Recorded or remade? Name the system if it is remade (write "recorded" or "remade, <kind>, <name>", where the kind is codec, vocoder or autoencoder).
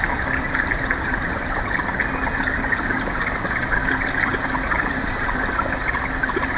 recorded